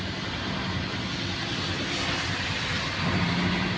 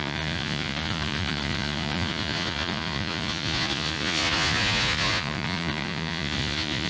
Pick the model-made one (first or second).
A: second